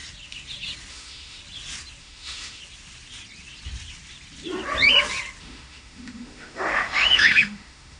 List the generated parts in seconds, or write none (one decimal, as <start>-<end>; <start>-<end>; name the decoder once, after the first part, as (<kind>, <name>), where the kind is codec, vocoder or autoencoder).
0.9-1.4 (autoencoder, DAC-VAE); 2.0-2.6; 5.4-8.0